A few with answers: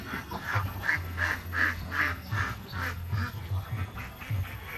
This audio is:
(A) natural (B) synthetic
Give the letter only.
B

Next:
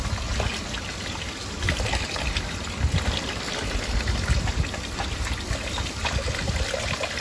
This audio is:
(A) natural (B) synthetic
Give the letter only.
A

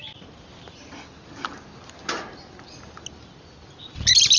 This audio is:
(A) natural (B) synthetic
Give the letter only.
A